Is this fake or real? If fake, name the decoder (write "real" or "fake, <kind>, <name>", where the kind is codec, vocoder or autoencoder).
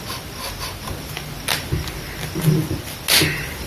real